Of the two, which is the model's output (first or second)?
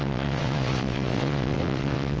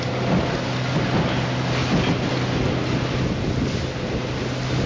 first